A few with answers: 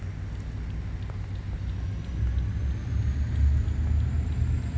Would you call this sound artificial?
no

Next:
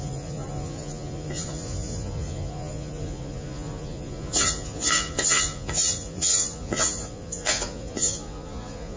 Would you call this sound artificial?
yes